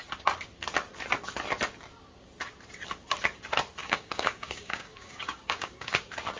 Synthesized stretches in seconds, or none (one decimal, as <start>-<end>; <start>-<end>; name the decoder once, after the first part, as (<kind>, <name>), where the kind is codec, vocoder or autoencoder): 3.8-6.0 (codec, DAC)